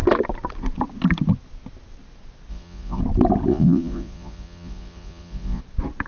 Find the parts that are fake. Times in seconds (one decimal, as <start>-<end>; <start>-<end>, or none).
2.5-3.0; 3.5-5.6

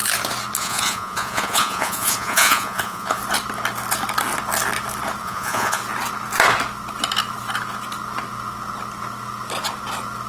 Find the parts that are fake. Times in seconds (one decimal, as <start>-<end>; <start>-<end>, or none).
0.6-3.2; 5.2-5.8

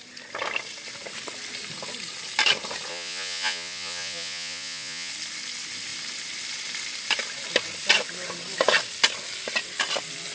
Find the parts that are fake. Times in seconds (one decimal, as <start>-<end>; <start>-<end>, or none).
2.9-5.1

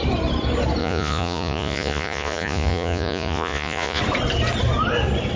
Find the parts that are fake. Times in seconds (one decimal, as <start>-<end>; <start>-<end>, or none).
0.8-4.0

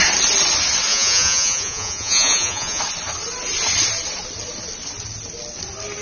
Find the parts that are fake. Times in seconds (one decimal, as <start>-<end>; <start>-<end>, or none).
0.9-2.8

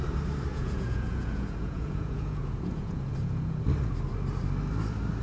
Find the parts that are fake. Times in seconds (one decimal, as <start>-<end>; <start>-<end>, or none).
0.5-3.6

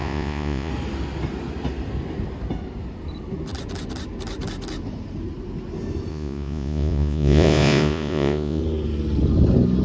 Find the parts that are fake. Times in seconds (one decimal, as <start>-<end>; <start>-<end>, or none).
0.0-0.7; 6.1-8.6

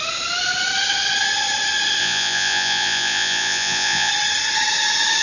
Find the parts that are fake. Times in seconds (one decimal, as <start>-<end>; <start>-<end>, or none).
2.0-4.1